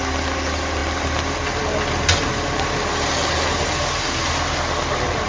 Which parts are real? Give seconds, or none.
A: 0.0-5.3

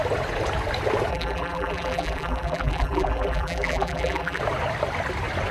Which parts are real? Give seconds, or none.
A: 0.0-1.1; 4.4-5.5

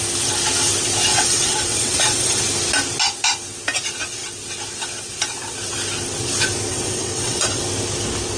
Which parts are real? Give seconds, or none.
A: 0.0-1.1; 2.4-6.7; 7.6-8.4

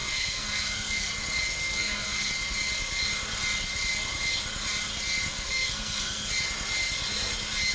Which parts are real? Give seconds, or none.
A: 1.1-1.5; 2.3-5.3; 6.3-7.7

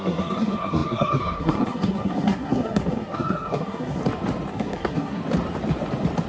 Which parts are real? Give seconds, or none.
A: 4.0-4.5; 5.2-6.3

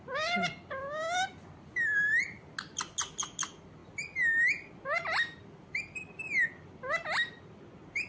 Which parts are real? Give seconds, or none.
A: 0.0-8.1